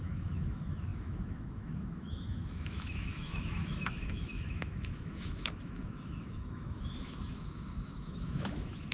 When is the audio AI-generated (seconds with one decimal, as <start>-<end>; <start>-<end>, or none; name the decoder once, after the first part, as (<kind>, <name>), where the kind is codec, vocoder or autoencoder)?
0.0-8.9 (autoencoder, DAC-VAE)